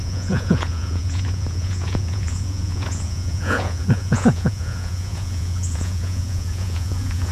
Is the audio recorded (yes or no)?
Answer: no